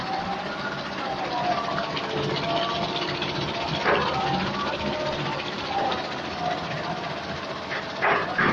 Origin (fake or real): real